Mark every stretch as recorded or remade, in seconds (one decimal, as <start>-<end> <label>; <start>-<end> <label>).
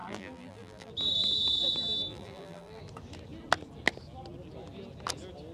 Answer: 0.0-0.9 remade; 0.9-2.1 recorded; 2.1-2.8 remade; 2.8-5.5 recorded